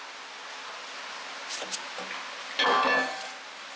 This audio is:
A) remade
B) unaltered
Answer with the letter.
B